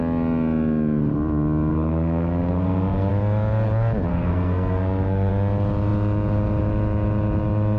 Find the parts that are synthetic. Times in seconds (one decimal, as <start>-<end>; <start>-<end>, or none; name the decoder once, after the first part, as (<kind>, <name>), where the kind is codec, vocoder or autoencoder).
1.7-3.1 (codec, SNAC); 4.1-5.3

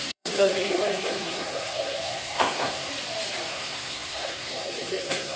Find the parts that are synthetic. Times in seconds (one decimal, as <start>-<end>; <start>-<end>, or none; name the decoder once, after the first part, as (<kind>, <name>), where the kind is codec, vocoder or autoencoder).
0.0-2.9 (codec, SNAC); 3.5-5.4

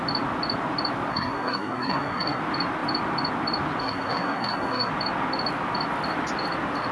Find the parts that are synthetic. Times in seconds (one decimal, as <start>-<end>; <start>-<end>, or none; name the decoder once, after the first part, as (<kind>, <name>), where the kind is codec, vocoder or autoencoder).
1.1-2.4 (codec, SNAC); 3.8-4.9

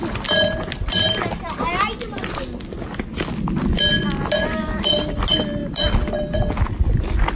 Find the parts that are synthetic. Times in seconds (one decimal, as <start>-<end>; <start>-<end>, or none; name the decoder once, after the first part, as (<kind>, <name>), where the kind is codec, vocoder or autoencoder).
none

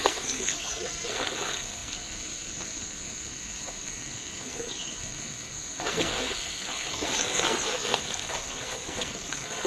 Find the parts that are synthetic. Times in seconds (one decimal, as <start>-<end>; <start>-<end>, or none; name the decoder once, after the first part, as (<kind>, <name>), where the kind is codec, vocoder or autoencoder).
0.0-9.7 (codec, SNAC)

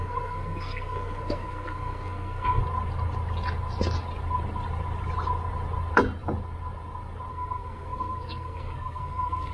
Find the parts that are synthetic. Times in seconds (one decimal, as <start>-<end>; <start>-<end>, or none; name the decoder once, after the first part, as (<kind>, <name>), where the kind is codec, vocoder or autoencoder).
0.0-2.6 (codec, SNAC); 7.3-9.5

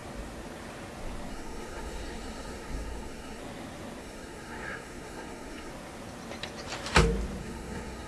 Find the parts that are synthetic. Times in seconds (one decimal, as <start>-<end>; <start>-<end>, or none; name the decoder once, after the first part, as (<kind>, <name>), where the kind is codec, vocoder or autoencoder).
1.3-3.4 (codec, SNAC); 4.0-5.7; 7.4-8.1